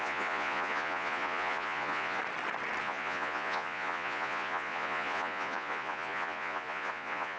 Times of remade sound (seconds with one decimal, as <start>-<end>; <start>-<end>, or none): 0.0-2.2; 2.8-7.4